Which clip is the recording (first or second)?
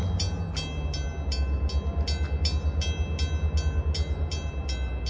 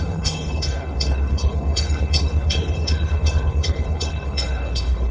first